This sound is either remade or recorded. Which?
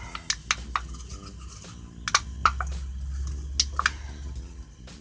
recorded